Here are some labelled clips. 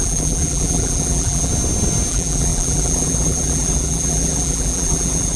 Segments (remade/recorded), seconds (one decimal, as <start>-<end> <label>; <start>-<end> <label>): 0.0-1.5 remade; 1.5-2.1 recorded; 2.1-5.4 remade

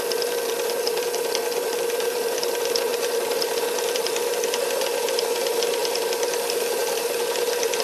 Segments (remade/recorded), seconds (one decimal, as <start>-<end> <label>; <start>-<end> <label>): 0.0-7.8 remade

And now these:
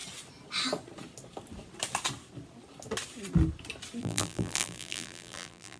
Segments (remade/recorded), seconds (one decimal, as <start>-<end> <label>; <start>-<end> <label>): 0.0-4.0 recorded; 4.0-5.8 remade

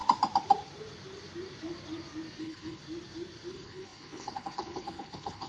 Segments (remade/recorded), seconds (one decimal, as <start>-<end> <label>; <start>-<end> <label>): 0.0-2.4 recorded; 2.4-2.8 remade; 2.8-3.5 recorded; 3.5-5.5 remade

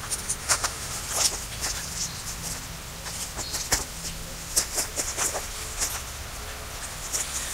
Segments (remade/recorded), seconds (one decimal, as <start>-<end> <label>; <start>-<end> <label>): 0.0-0.4 recorded; 0.4-1.0 remade; 1.0-7.5 recorded